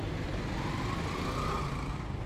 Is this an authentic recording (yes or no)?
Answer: yes